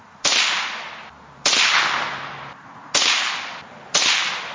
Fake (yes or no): no